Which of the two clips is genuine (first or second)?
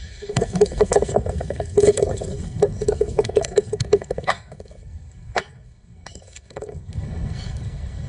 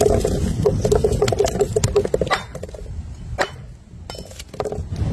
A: second